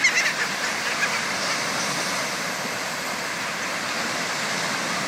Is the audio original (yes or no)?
yes